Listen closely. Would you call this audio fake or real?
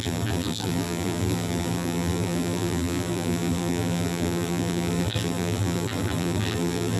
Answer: fake